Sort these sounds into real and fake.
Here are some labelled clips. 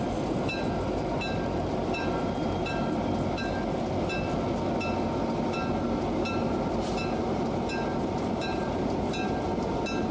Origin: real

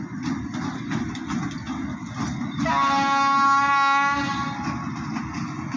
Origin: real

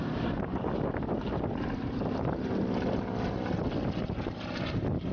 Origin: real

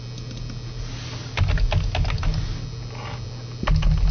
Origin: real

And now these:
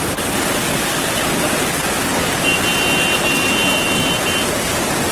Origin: real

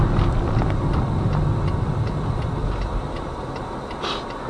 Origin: real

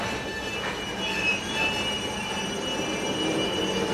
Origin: real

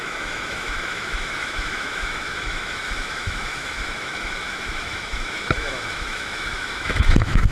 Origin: fake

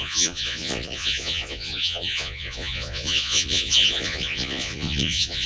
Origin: fake